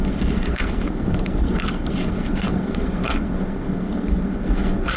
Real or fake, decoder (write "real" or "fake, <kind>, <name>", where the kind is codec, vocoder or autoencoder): fake, codec, SNAC